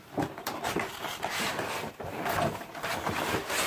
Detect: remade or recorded remade